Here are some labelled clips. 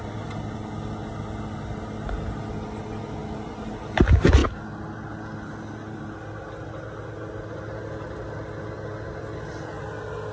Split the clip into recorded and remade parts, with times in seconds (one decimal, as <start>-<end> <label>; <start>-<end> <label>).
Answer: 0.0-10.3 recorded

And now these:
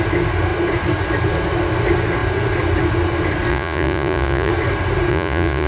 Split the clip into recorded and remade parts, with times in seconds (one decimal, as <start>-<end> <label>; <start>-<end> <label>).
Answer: 0.0-3.5 recorded; 3.5-4.5 remade; 4.5-5.1 recorded; 5.1-5.7 remade

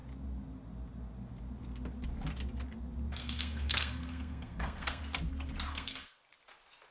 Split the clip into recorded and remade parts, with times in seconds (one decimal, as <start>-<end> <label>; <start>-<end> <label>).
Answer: 0.0-3.2 recorded; 3.2-5.0 remade; 5.0-5.7 recorded; 5.7-6.2 remade; 6.2-6.9 recorded

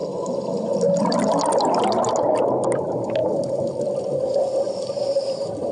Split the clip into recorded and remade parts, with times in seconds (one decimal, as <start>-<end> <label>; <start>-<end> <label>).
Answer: 0.0-5.7 recorded

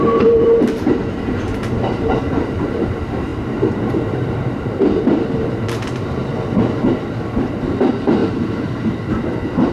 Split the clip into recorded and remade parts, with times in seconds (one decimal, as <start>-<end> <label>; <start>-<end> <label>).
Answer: 0.0-6.3 remade; 6.3-7.4 recorded; 7.4-9.7 remade